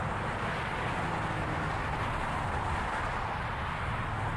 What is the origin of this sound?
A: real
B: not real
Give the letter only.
A